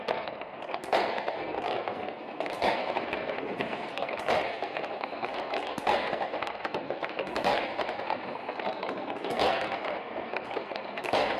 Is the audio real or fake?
fake